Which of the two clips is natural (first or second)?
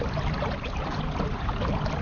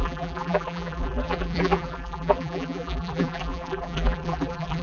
first